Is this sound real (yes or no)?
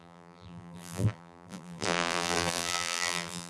no